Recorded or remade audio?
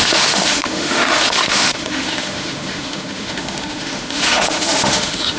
remade